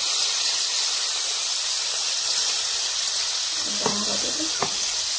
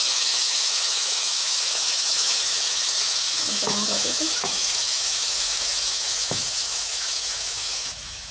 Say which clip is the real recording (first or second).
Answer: first